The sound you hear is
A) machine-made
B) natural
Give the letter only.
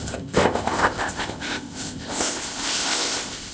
A